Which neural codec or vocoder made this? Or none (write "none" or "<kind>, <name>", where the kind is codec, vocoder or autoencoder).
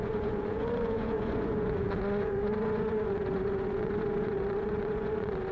vocoder, Vocos